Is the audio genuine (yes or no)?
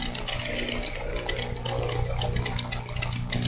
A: yes